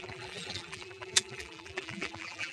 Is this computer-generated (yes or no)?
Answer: yes